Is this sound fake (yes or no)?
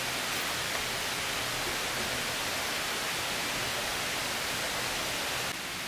no